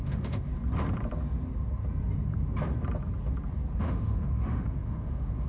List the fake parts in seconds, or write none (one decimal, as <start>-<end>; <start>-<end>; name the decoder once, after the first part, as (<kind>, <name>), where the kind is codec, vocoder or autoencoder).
0.0-0.5 (autoencoder, DAC-VAE); 3.8-5.5